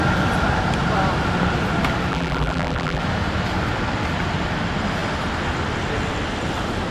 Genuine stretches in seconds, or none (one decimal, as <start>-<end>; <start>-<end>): 0.0-2.1; 3.0-6.9